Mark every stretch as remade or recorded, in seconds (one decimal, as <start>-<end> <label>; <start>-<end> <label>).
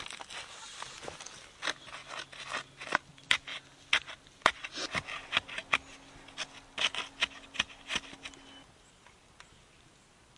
0.0-10.4 recorded